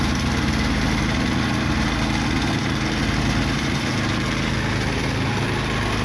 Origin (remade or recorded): recorded